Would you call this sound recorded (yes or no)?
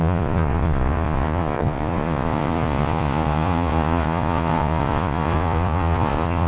no